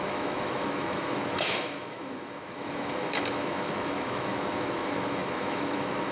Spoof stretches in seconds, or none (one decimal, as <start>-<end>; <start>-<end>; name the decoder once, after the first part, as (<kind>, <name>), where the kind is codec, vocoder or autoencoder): 0.0-6.1 (autoencoder, DAC-VAE)